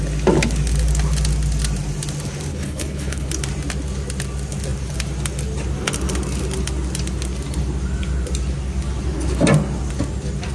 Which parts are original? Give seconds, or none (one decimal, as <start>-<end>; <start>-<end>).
0.0-2.5; 3.3-10.5